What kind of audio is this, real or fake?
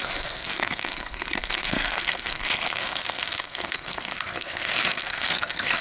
fake